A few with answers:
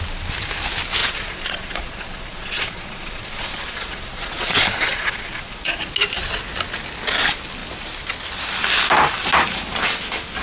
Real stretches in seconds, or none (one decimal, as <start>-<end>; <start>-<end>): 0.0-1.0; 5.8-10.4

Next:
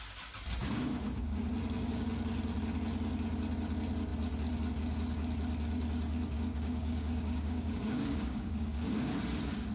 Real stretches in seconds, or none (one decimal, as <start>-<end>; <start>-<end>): 0.0-0.6; 1.4-6.5; 9.1-9.7

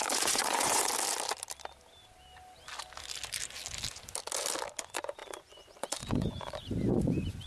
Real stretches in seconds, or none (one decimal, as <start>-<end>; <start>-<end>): 0.9-4.8

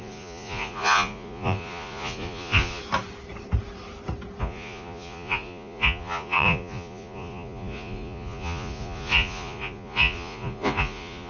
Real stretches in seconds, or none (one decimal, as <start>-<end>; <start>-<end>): 2.8-4.4

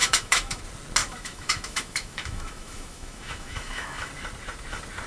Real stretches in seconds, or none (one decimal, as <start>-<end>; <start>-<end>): 0.6-1.0; 4.1-5.1